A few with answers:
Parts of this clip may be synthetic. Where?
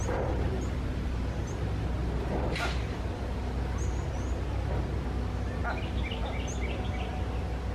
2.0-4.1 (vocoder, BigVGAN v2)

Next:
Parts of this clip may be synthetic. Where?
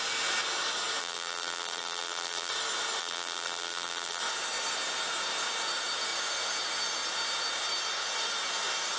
1.0-2.5 (vocoder, BigVGAN v2); 3.0-4.2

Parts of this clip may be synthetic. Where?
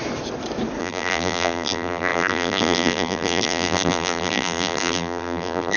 0.8-5.8 (vocoder, BigVGAN v2)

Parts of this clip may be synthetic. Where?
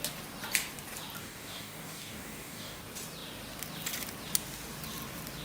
1.2-2.8 (codec, DAC)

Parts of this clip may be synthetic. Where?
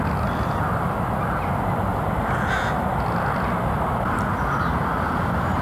none